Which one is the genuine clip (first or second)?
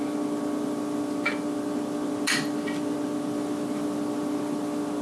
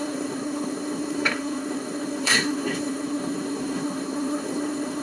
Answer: first